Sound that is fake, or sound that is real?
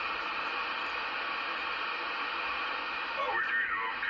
real